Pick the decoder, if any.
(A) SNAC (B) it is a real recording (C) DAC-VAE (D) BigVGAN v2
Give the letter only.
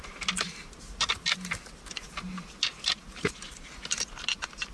B